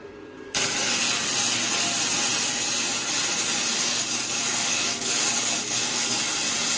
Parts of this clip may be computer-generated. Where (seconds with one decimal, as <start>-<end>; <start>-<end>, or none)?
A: 3.7-6.2